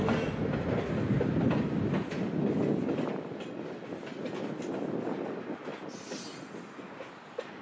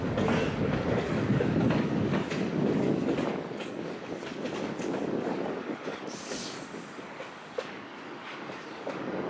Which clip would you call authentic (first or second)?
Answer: first